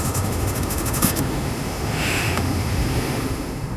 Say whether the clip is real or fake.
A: fake